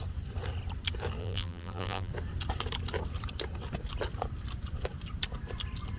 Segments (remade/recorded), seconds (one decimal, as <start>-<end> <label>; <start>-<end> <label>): 0.0-1.2 recorded; 1.2-2.1 remade; 2.1-6.0 recorded